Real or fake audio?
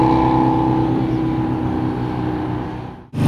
real